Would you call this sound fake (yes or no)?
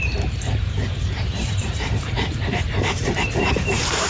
yes